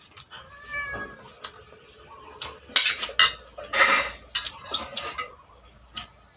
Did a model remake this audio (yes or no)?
no